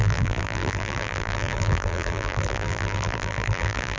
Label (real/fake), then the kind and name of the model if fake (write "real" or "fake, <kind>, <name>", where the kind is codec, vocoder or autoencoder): fake, vocoder, BigVGAN v2